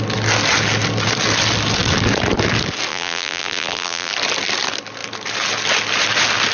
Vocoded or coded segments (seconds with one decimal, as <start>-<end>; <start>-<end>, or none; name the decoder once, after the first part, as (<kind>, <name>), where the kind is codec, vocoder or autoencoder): 2.9-4.1 (vocoder, BigVGAN v2)